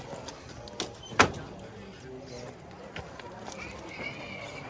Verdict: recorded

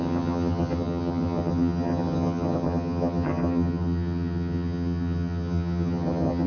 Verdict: remade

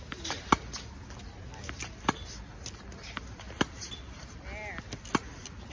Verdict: recorded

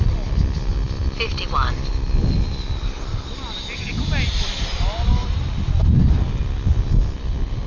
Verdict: recorded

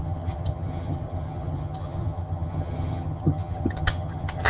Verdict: remade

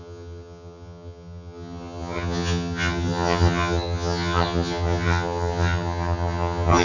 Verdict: remade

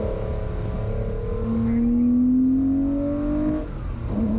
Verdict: recorded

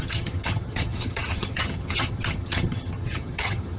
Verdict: remade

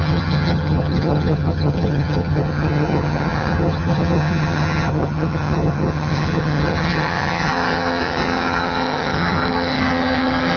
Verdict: remade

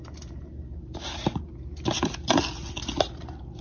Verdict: recorded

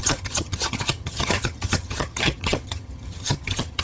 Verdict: remade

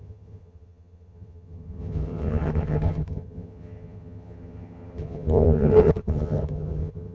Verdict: remade